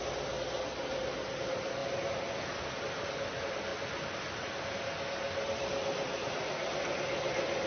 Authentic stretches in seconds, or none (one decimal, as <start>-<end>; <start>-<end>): 0.0-7.7